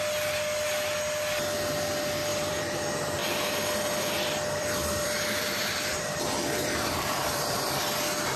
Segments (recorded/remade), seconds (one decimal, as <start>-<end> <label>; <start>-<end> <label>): 0.0-2.3 recorded; 2.3-2.8 remade; 2.8-3.2 recorded; 3.2-7.8 remade; 7.8-8.4 recorded